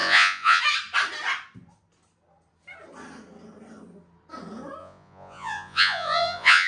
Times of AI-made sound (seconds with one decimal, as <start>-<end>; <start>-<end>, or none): 0.0-0.6; 4.8-6.7